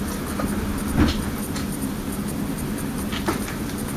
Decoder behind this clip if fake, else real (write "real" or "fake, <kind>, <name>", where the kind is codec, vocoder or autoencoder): real